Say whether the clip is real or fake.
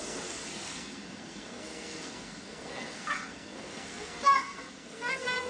fake